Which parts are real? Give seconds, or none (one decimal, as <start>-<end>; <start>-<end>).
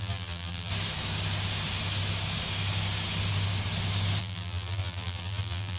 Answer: 0.7-4.2